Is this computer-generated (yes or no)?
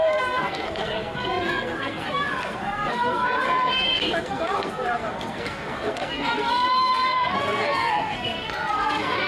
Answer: yes